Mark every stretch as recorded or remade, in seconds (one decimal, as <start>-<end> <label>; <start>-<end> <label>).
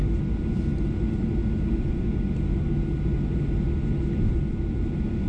0.0-5.3 recorded